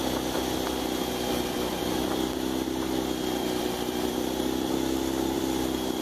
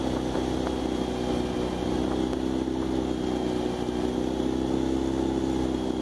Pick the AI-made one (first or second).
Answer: first